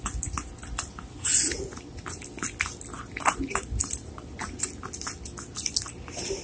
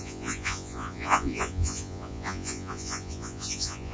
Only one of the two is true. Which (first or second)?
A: first